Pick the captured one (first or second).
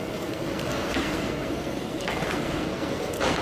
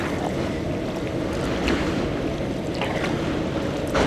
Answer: second